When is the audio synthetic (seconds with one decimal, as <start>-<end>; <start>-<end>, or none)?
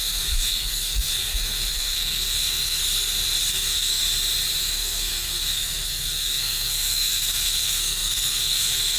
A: 0.0-2.8; 3.5-4.0; 4.6-9.0